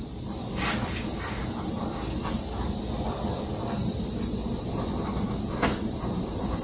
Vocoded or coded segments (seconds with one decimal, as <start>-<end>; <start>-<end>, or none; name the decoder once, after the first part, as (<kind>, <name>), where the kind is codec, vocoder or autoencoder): none